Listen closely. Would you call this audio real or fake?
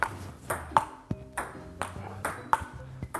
fake